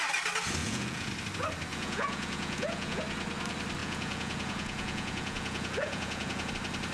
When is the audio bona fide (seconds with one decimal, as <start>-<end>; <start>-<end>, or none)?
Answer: 0.0-0.6; 1.1-1.7; 3.0-3.8; 6.5-6.9